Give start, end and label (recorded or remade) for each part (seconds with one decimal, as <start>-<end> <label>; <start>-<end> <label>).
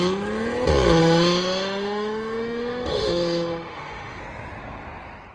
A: 0.0-1.0 recorded; 1.0-4.2 remade; 4.2-5.3 recorded